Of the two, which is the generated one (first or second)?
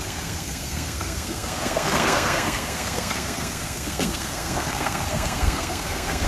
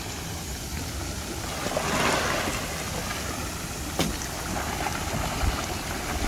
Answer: first